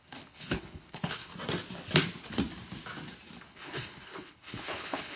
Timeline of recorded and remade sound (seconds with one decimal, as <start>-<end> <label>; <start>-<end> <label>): 0.0-1.3 remade; 1.3-3.4 recorded; 3.4-5.2 remade

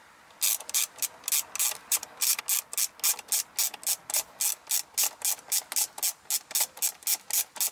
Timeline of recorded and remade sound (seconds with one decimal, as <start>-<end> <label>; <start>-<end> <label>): 0.0-1.8 recorded; 1.8-2.4 remade; 2.4-7.7 recorded

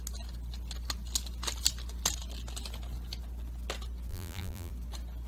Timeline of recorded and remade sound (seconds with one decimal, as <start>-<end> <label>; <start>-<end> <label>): 0.0-4.1 recorded; 4.1-4.7 remade; 4.7-5.3 recorded

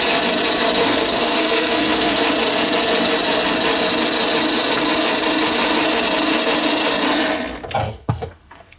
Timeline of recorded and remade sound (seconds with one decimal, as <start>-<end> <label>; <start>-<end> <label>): 0.0-0.8 recorded; 0.8-2.2 remade; 2.2-7.8 recorded; 7.8-8.8 remade

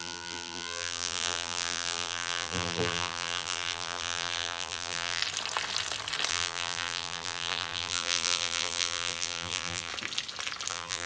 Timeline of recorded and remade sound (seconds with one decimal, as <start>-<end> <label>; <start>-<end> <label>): 0.0-5.2 remade; 5.2-6.3 recorded; 6.3-9.9 remade; 9.9-10.7 recorded; 10.7-11.1 remade